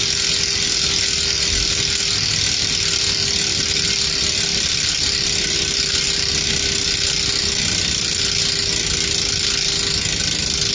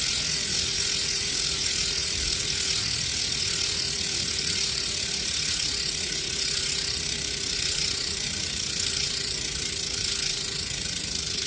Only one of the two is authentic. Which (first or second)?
first